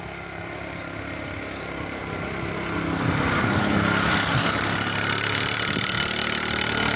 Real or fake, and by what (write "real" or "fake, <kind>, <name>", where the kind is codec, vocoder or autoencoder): real